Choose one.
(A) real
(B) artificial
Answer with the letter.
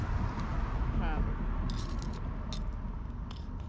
A